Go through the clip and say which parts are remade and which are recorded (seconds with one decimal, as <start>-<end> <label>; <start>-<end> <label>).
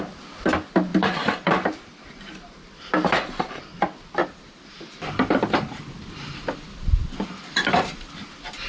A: 0.0-0.9 recorded; 0.9-1.5 remade; 1.5-4.2 recorded; 4.2-8.1 remade; 8.1-8.7 recorded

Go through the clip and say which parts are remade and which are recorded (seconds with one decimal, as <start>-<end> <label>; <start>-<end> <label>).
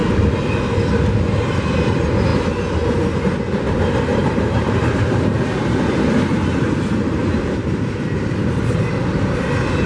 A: 0.0-4.1 recorded; 4.1-5.4 remade; 5.4-7.2 recorded; 7.2-8.9 remade; 8.9-9.9 recorded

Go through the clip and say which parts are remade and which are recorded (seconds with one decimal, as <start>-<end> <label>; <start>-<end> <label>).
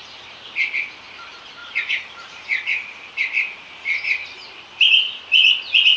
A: 0.0-1.6 recorded; 1.6-5.2 remade; 5.2-6.0 recorded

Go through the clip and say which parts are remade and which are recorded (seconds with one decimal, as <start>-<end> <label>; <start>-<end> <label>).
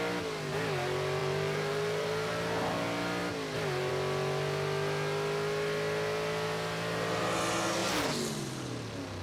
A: 0.0-1.2 recorded; 1.2-2.3 remade; 2.3-9.2 recorded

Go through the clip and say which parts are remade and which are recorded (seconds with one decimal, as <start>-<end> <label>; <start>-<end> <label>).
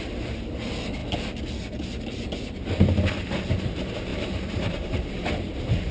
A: 0.0-4.1 recorded; 4.1-5.1 remade; 5.1-5.9 recorded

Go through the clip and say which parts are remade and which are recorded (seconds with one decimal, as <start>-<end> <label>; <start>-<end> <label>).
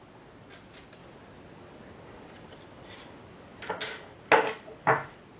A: 0.0-5.4 recorded